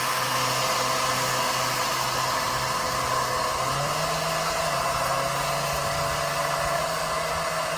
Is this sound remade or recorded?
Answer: recorded